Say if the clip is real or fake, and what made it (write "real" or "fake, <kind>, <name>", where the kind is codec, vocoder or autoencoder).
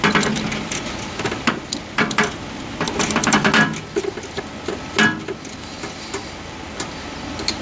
real